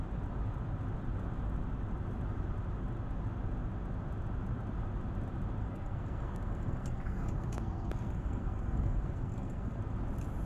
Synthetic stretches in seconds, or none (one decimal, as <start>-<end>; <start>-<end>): 5.6-9.8